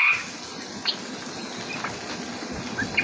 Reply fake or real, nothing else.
real